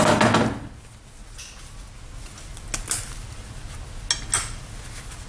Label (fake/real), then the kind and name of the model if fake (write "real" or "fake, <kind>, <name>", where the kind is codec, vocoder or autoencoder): real